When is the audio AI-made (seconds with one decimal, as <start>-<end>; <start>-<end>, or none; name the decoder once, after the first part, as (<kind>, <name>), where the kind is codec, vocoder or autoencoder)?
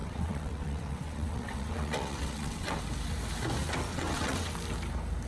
0.0-2.8 (vocoder, WaveNeXt); 3.9-4.5